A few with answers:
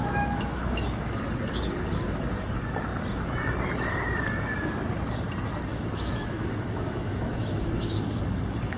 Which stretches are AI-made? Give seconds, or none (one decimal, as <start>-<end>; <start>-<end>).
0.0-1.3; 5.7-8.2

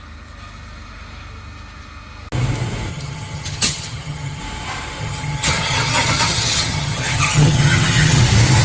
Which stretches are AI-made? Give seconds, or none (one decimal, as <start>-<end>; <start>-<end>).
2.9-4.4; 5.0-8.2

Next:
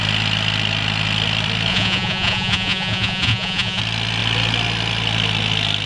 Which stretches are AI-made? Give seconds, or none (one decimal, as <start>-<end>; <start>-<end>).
1.7-3.8

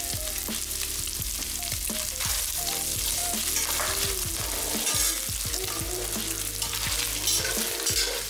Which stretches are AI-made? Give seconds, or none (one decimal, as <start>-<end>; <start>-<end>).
none

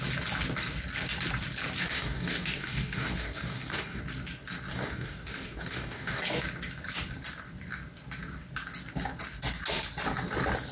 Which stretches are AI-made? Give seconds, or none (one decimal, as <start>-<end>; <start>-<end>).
1.8-4.0; 4.7-6.2

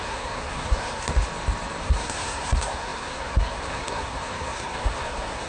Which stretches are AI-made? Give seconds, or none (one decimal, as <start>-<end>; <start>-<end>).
0.0-1.1; 1.8-5.5

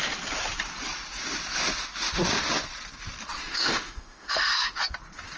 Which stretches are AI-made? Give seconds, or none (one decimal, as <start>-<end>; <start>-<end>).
3.4-4.8

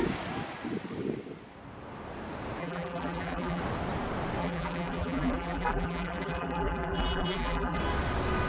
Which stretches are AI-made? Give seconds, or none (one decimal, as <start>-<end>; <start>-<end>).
2.6-3.6; 4.4-7.8